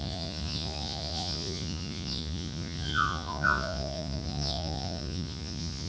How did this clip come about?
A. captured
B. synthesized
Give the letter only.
B